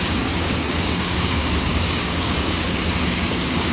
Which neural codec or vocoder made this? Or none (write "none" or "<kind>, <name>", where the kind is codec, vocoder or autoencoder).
codec, DAC